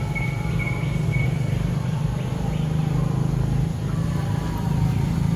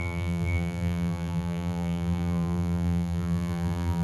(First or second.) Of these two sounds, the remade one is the second